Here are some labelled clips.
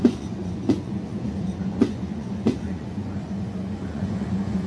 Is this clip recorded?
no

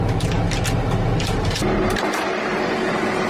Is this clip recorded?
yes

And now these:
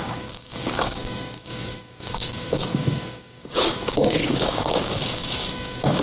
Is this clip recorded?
no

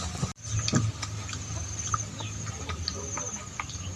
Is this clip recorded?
yes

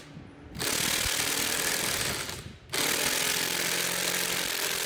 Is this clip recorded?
yes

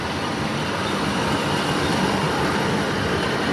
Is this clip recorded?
yes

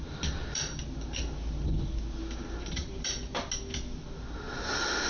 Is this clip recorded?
yes